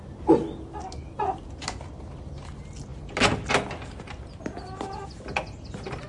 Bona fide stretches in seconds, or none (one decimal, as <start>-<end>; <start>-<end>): 0.0-6.1